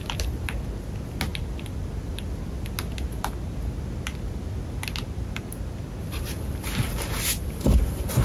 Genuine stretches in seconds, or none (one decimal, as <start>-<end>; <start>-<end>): 0.0-8.2